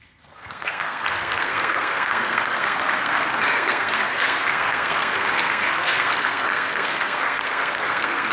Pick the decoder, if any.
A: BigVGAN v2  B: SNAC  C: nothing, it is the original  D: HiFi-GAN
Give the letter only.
B